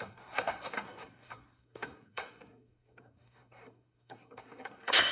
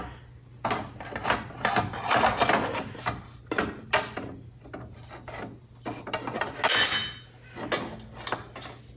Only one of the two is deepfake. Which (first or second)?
first